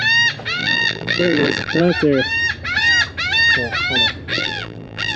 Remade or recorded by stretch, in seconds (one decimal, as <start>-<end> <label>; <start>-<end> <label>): 0.0-0.6 recorded; 0.6-1.8 remade; 1.8-4.3 recorded; 4.3-5.2 remade